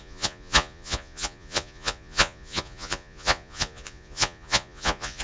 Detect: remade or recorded remade